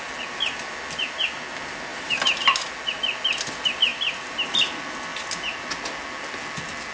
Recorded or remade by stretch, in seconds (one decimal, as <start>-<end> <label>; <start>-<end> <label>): 0.0-1.9 recorded; 1.9-2.7 remade; 2.7-3.9 recorded; 3.9-4.5 remade; 4.5-6.9 recorded